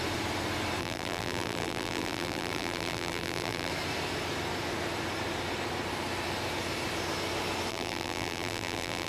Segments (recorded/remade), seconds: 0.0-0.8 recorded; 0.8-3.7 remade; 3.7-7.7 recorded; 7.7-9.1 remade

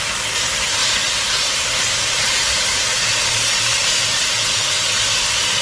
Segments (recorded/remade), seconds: 0.0-0.8 recorded; 0.8-4.2 remade; 4.2-5.6 recorded

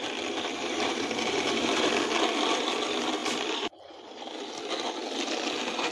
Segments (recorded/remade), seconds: 0.0-0.6 recorded; 0.6-1.9 remade; 1.9-3.2 recorded; 3.2-4.5 remade; 4.5-5.9 recorded

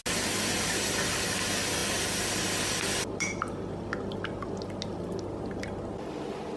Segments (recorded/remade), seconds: 0.0-6.6 recorded

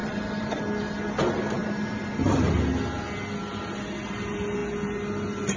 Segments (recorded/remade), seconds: 0.0-0.6 remade; 0.6-1.6 recorded; 1.6-2.5 remade; 2.5-5.6 recorded

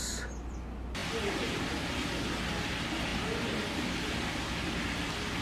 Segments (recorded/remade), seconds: 0.0-5.4 recorded

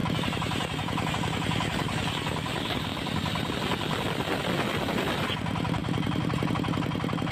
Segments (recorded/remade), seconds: 0.0-1.1 remade; 1.1-5.8 recorded; 5.8-6.5 remade; 6.5-7.3 recorded

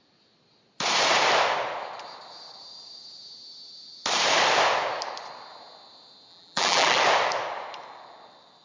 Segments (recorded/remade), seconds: 0.0-6.3 recorded; 6.3-7.0 remade; 7.0-8.6 recorded